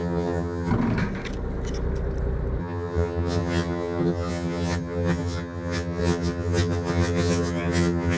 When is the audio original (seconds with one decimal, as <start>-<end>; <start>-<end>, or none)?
0.7-2.6